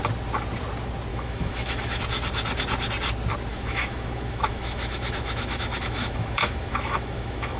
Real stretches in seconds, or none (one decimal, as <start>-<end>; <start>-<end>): 0.0-1.1; 2.0-3.5